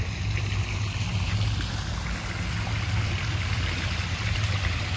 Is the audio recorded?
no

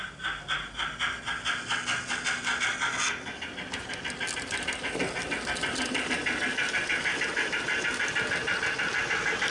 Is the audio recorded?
yes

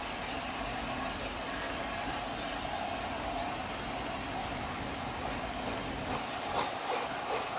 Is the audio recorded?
yes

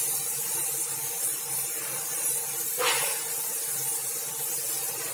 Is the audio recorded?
yes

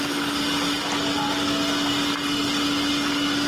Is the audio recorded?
yes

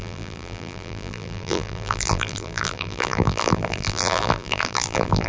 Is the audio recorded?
no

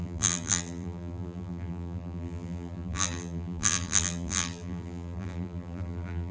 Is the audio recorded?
no